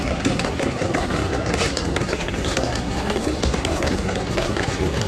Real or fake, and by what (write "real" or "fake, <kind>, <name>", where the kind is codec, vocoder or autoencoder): fake, codec, SNAC